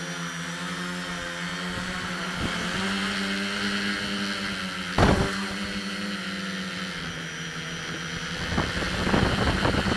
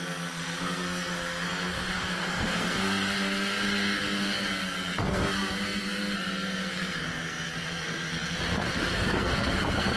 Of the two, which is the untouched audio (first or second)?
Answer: first